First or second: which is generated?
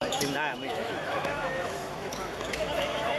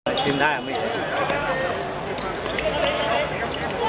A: first